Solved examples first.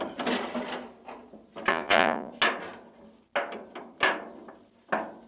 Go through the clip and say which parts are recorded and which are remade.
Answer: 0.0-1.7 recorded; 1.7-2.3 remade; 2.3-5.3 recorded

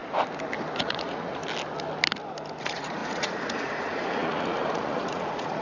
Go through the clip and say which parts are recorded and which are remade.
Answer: 0.0-0.8 recorded; 0.8-1.4 remade; 1.4-2.6 recorded; 2.6-5.6 remade

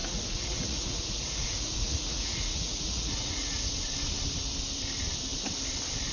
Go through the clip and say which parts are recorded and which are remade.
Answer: 0.0-3.7 remade; 3.7-6.1 recorded

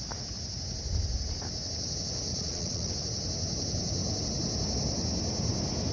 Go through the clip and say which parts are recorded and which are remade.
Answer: 0.0-2.3 recorded; 2.3-2.9 remade; 2.9-5.9 recorded

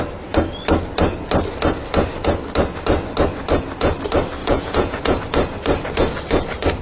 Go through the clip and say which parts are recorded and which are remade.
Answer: 0.0-4.4 recorded; 4.4-5.2 remade; 5.2-6.8 recorded

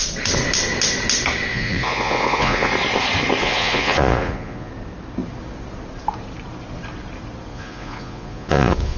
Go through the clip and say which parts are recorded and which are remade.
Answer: 0.0-1.5 recorded; 1.5-2.7 remade; 2.7-3.4 recorded; 3.4-4.7 remade; 4.7-7.5 recorded; 7.5-9.0 remade

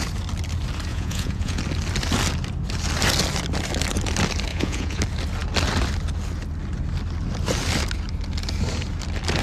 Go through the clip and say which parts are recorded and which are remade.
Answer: 0.0-0.9 recorded; 0.9-1.6 remade; 1.6-4.5 recorded; 4.5-5.0 remade; 5.0-9.4 recorded